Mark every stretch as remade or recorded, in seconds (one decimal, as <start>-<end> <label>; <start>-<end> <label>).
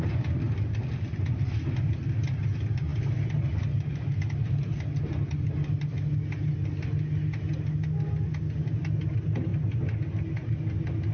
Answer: 0.0-11.1 recorded